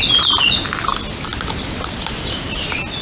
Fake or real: real